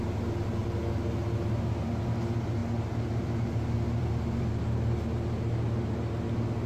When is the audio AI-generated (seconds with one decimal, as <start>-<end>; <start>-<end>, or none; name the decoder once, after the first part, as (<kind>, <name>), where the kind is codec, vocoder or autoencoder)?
none